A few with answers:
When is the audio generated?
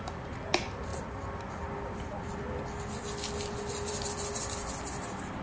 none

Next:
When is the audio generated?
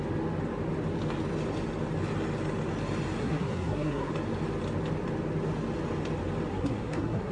3.2-4.1 (codec, SNAC); 6.5-7.3